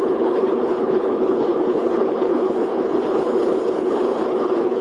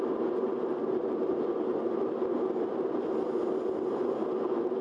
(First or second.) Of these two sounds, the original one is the second